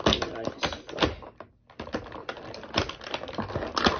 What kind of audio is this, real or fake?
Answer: real